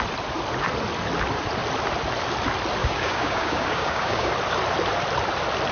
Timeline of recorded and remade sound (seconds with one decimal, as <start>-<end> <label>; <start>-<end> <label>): 0.0-2.8 recorded; 2.8-4.3 remade; 4.3-5.7 recorded